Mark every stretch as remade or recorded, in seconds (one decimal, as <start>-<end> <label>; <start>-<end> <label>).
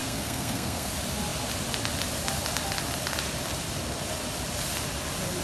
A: 0.0-0.9 remade; 0.9-5.4 recorded